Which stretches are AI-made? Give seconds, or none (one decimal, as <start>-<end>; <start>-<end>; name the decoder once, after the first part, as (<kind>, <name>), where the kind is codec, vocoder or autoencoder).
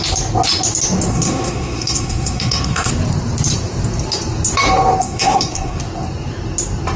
1.1-2.9 (codec, SNAC); 5.0-5.8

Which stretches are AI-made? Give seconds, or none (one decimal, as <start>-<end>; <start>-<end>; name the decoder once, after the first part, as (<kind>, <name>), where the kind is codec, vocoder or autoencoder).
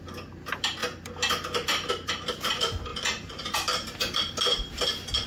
2.9-4.4 (vocoder, BigVGAN v2)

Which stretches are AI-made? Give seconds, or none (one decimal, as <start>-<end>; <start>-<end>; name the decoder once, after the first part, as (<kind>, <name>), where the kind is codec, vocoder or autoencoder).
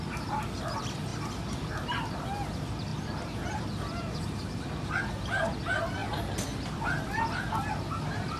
2.9-3.6 (vocoder, BigVGAN v2)